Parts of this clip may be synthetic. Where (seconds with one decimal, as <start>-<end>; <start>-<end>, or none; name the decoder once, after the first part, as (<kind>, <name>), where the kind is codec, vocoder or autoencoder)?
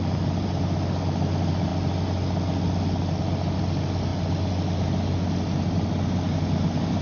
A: none